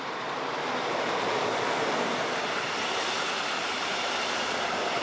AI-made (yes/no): yes